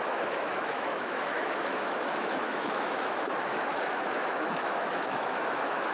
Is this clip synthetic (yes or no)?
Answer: yes